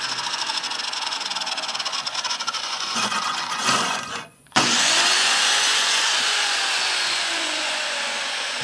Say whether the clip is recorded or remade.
remade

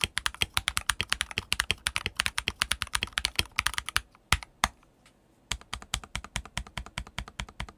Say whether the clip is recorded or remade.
recorded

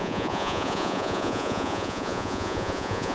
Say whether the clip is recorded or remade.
remade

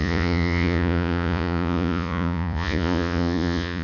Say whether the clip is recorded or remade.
remade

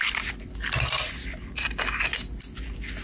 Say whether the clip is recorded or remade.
recorded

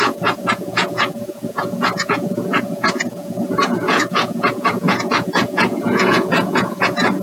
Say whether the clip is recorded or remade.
remade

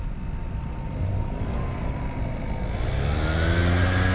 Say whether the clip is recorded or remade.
recorded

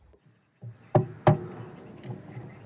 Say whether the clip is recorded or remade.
recorded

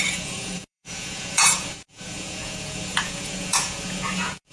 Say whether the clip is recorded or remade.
remade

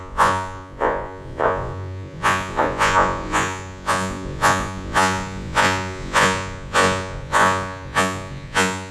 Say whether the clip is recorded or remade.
remade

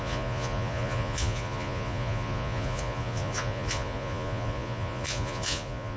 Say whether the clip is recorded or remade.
remade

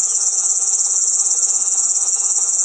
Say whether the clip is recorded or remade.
remade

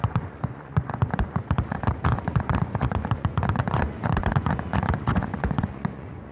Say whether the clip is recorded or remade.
remade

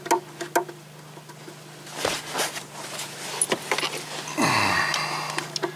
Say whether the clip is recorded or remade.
recorded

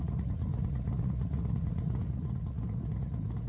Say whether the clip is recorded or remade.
remade